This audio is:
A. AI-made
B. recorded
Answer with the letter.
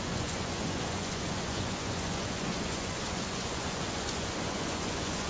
A